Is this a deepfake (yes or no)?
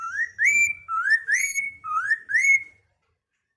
yes